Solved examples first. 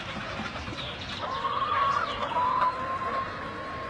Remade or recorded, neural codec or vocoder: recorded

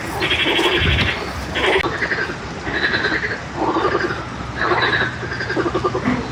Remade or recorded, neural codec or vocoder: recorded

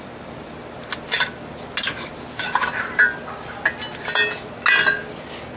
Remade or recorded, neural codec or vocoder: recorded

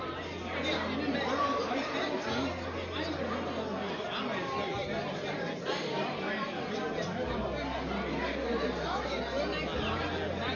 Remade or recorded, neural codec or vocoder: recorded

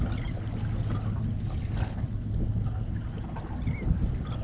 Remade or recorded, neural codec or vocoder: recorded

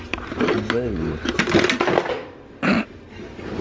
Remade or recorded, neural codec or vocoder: recorded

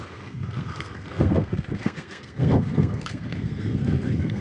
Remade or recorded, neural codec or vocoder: remade, codec, SNAC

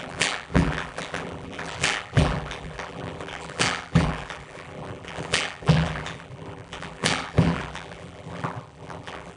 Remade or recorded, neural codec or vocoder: remade, vocoder, BigVGAN v2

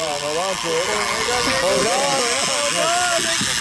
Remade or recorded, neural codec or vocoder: recorded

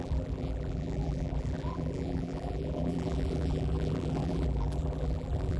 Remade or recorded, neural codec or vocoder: remade, vocoder, BigVGAN v2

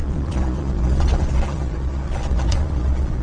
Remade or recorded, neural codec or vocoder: remade, vocoder, Vocos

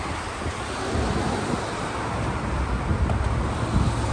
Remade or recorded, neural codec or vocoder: recorded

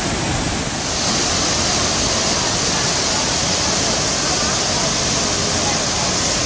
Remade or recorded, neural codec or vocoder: recorded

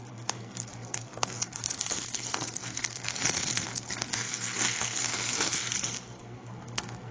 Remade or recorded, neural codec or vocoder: remade, codec, SNAC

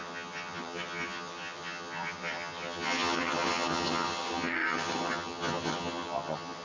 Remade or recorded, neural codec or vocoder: remade, vocoder, HiFi-GAN